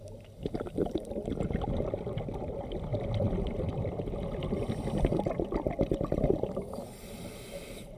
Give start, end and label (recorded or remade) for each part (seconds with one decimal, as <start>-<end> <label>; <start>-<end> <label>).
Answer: 0.0-8.0 recorded